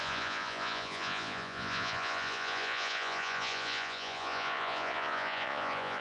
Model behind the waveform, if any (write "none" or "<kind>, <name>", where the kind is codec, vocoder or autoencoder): vocoder, Vocos